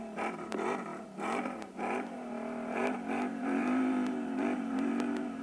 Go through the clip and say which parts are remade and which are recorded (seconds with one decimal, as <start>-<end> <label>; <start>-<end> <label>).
0.0-5.4 remade